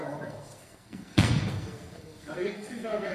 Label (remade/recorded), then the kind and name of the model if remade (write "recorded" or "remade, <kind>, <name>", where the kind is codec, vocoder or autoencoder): remade, codec, SNAC